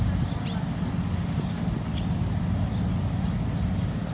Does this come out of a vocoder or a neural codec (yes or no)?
no